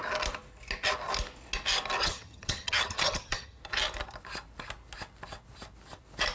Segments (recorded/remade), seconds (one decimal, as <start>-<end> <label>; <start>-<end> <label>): 0.0-2.0 recorded; 2.0-3.6 remade; 3.6-6.3 recorded